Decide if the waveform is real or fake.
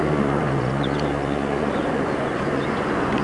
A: fake